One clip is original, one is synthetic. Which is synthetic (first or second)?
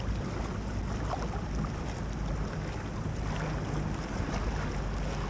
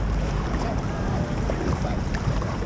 second